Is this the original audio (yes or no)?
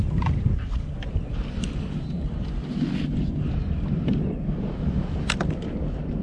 yes